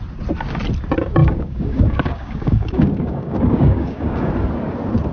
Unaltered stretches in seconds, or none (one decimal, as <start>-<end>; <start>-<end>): 0.0-1.2; 4.3-5.1